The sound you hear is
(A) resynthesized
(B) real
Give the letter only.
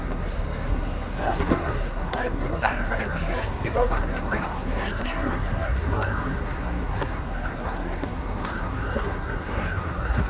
A